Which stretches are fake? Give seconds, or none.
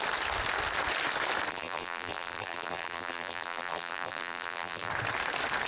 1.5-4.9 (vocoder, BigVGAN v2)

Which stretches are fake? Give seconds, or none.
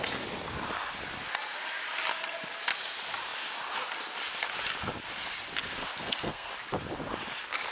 5.8-6.5 (codec, SNAC)